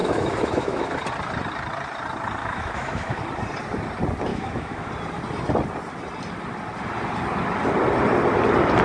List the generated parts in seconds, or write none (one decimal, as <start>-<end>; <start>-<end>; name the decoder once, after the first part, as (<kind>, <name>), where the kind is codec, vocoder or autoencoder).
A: 0.0-0.9 (autoencoder, DAC-VAE); 2.4-3.2; 4.3-4.9